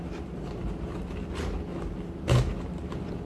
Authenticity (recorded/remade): remade